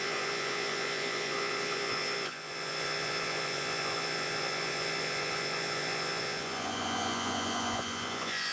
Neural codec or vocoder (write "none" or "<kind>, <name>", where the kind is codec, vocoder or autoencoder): vocoder, Vocos